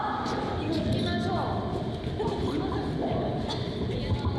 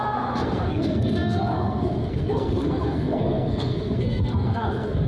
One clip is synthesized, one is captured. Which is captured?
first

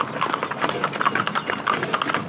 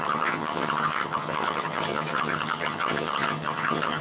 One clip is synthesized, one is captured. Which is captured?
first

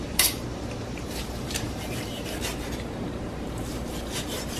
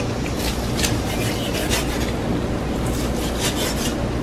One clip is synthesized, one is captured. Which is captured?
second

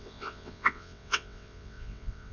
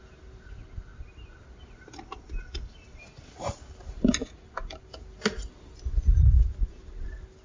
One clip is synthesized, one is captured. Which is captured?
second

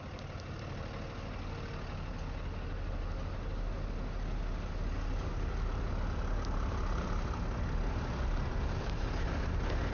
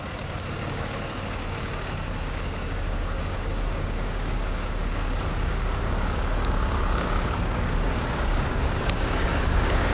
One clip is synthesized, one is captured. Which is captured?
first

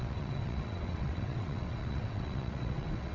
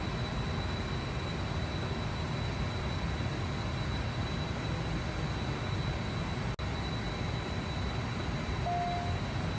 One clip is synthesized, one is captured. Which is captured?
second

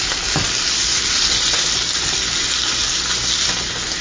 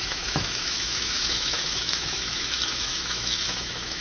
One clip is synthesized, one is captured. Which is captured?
first